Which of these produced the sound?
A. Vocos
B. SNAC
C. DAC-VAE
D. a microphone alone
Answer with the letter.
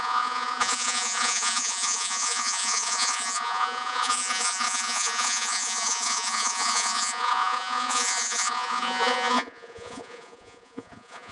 A